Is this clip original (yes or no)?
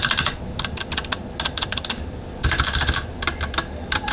yes